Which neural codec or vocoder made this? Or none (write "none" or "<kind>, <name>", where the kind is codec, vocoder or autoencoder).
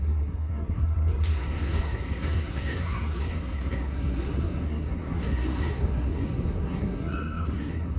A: codec, SNAC